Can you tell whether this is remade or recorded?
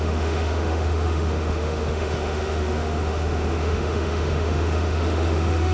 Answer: remade